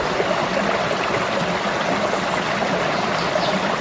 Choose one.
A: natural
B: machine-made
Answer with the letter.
A